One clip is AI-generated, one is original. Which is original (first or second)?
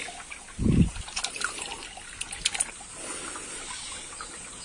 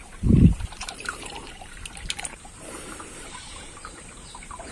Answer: first